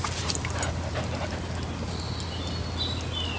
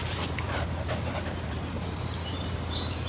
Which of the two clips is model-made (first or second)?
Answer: second